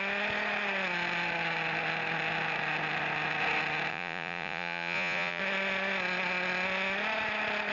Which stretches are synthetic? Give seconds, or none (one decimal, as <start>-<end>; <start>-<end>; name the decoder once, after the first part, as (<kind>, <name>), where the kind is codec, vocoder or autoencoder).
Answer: 3.9-5.4 (vocoder, Vocos)

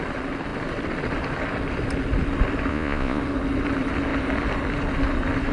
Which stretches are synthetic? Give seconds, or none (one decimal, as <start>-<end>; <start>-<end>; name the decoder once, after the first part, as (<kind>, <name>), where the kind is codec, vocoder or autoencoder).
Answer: 2.7-3.2 (vocoder, Vocos)

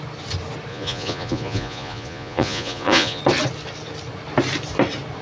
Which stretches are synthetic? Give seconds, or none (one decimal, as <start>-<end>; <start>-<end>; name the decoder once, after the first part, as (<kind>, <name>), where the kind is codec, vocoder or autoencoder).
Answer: 0.7-3.2 (vocoder, Vocos)

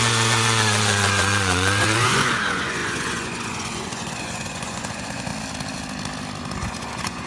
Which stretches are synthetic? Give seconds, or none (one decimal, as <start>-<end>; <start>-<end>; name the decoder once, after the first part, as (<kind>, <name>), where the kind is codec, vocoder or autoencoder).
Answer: 0.0-5.3 (vocoder, Vocos); 6.6-7.3

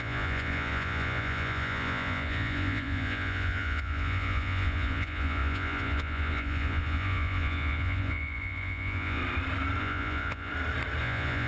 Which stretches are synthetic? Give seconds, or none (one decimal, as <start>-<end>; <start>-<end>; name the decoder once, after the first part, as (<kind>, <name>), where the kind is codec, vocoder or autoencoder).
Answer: 0.0-9.2 (vocoder, Vocos); 9.8-10.5; 11.0-11.5